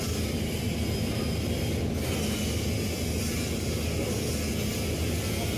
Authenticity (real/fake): real